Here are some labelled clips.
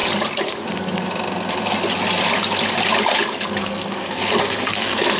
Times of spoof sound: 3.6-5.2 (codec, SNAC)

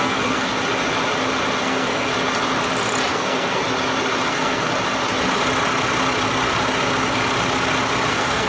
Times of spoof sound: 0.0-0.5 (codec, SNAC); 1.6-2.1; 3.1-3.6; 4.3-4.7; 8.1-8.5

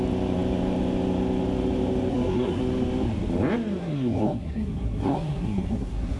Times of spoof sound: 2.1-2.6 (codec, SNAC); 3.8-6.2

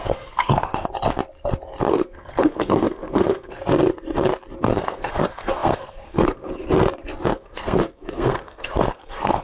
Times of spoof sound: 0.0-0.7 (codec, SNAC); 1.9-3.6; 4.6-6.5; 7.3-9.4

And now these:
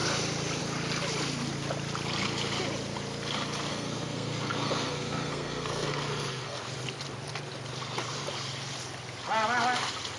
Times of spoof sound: 3.7-6.6 (codec, SNAC)